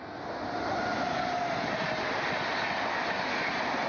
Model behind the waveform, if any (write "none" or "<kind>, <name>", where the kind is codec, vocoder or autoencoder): none